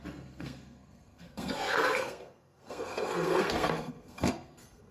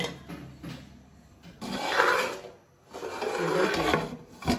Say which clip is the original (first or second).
second